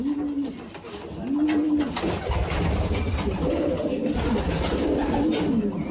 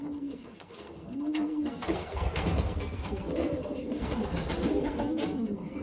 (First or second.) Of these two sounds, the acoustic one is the first